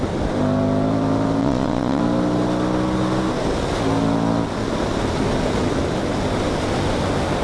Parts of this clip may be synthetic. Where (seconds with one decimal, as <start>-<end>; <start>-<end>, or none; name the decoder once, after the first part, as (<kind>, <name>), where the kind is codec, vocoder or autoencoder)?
1.4-2.0 (vocoder, Vocos)